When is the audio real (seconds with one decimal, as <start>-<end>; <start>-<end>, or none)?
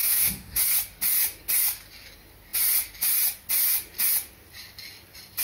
0.6-5.4